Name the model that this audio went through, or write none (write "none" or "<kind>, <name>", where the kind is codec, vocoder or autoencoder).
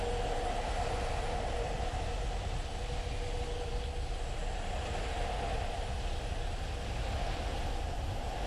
none